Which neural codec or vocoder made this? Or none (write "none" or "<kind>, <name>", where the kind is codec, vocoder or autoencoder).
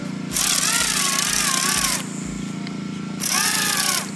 none